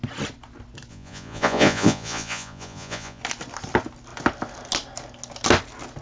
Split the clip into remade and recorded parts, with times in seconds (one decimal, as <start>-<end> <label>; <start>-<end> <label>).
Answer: 0.0-0.9 recorded; 0.9-3.2 remade; 3.2-6.0 recorded